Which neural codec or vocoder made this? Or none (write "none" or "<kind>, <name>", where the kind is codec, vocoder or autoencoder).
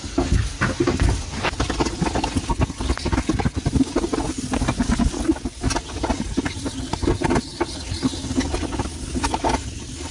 none